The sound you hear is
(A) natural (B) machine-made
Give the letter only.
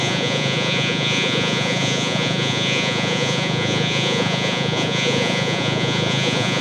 B